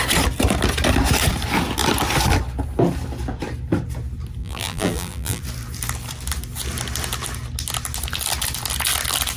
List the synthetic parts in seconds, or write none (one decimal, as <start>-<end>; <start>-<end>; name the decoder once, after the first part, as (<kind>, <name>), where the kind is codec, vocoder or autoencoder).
4.4-5.4 (vocoder, BigVGAN v2)